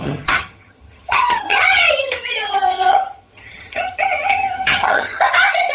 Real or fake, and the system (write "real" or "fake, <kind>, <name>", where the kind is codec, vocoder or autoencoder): fake, vocoder, HiFi-GAN